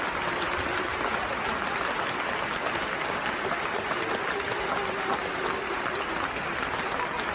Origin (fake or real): real